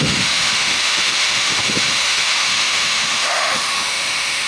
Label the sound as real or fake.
fake